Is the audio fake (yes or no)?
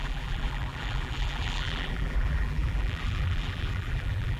yes